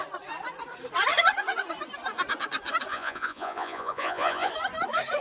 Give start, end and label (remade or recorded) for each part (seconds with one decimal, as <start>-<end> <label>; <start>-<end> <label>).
0.0-2.9 recorded; 2.9-4.5 remade; 4.5-5.2 recorded